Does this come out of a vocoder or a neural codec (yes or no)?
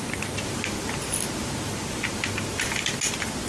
no